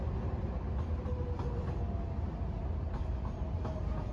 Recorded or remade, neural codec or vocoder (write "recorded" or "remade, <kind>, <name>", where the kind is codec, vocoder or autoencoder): recorded